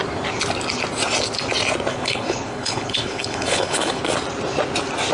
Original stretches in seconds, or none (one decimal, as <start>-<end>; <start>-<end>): 0.0-1.9; 4.0-5.1